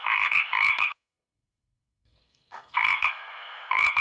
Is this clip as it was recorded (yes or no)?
no